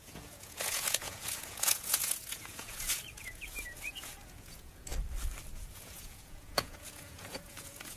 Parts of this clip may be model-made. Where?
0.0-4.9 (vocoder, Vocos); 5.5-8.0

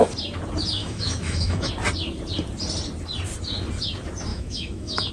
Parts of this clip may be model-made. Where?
0.8-1.7 (autoencoder, DAC-VAE); 4.3-5.1

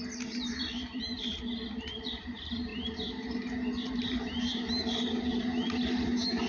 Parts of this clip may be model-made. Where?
0.0-6.5 (vocoder, BigVGAN v2)

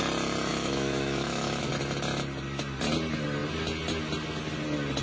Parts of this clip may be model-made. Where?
0.5-1.7 (autoencoder, DAC-VAE)

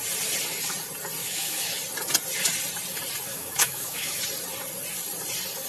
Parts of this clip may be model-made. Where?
1.2-1.8 (autoencoder, DAC-VAE); 3.3-4.2

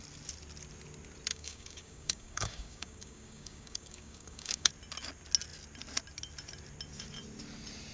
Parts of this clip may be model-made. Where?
1.3-4.7 (codec, DAC)

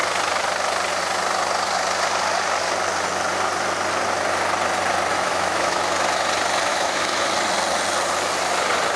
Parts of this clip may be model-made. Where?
5.1-5.8 (autoencoder, DAC-VAE); 6.7-7.3

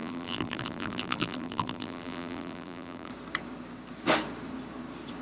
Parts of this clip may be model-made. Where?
0.0-3.1 (vocoder, BigVGAN v2)